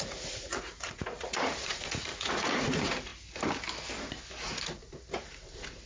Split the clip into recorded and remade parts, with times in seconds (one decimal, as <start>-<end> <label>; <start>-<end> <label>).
0.0-3.1 remade; 3.1-4.4 recorded; 4.4-5.9 remade